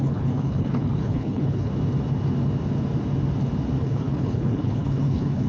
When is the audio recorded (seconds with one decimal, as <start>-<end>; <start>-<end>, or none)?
1.7-3.8